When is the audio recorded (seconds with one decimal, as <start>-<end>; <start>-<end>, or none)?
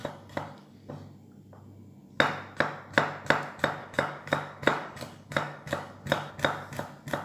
0.9-3.8; 6.3-7.2